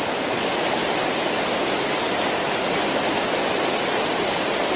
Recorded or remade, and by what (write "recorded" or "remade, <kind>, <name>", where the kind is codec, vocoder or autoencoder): recorded